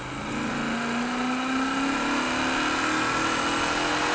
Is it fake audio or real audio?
real